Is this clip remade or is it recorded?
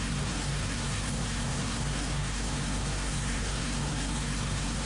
remade